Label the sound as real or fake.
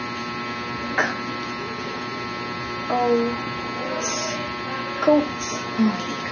real